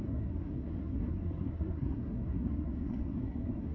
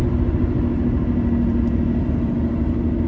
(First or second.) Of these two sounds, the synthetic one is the first